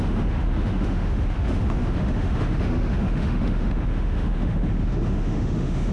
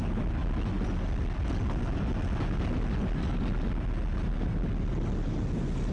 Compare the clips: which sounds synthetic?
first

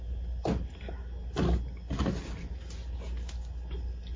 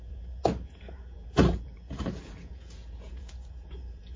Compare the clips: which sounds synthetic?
second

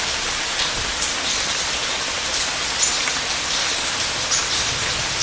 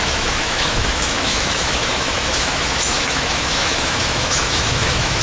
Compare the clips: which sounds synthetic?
second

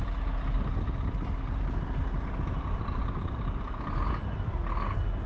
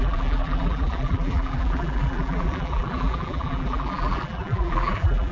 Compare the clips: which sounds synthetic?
second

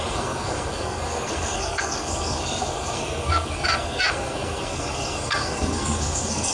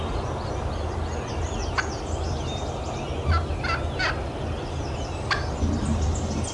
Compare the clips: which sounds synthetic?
first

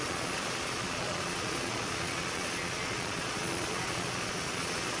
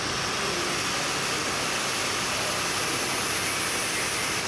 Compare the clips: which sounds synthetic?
first